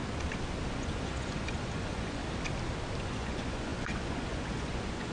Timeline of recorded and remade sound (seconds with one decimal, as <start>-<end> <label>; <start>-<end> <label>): 0.0-0.7 recorded; 0.7-2.2 remade; 2.2-3.0 recorded; 3.0-5.1 remade